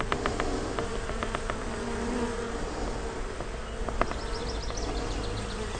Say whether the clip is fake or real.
real